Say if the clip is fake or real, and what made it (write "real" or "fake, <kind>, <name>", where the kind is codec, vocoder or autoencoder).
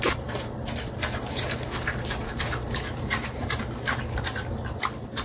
fake, vocoder, BigVGAN v2